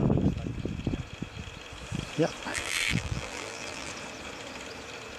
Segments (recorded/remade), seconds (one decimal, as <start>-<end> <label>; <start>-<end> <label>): 0.0-2.5 recorded; 2.5-3.9 remade; 3.9-5.2 recorded